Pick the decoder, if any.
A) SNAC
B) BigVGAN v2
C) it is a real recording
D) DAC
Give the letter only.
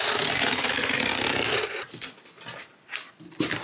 C